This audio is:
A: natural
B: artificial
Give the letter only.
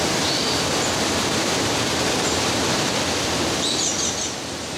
B